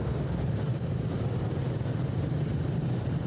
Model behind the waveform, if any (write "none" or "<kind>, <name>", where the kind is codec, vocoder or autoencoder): vocoder, BigVGAN v2